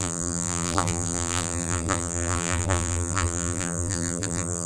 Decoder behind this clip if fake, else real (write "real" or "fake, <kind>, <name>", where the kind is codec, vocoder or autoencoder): fake, vocoder, BigVGAN v2